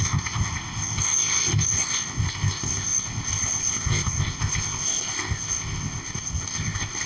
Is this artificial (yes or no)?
yes